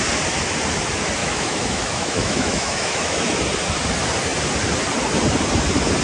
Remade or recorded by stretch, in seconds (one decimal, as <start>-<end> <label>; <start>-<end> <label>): 0.0-1.2 recorded; 1.2-3.4 remade; 3.4-6.0 recorded

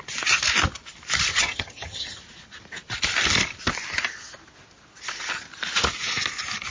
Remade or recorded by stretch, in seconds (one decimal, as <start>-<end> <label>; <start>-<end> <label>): 0.0-1.3 recorded; 1.3-2.2 remade; 2.2-6.7 recorded

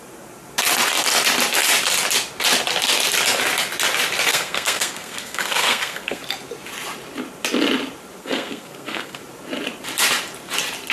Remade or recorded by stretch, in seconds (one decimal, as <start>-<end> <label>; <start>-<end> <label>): 0.0-4.3 recorded; 4.3-6.2 remade; 6.2-8.2 recorded; 8.2-9.2 remade; 9.2-10.9 recorded

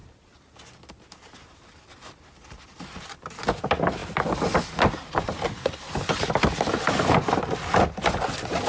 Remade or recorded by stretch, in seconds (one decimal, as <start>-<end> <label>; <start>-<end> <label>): 0.0-8.7 recorded

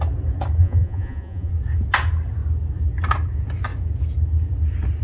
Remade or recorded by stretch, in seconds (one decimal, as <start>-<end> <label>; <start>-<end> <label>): 0.0-0.6 recorded; 0.6-1.5 remade; 1.5-5.0 recorded